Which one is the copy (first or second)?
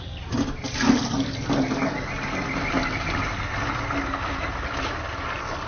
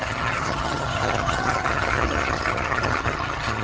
second